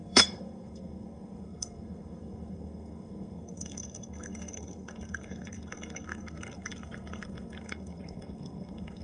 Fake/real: fake